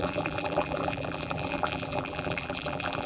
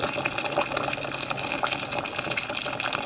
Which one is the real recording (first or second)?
second